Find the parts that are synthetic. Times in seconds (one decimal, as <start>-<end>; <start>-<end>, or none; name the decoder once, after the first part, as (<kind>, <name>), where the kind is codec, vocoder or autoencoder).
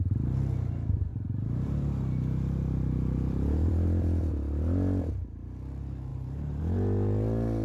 1.1-3.7 (vocoder, BigVGAN v2); 6.1-6.6